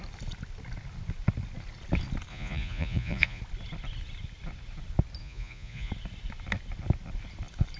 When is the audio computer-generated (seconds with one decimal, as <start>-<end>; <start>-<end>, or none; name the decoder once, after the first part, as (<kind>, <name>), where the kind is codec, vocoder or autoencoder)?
2.3-3.4 (vocoder, Vocos); 5.2-5.9